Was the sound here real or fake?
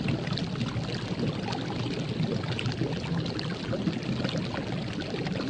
real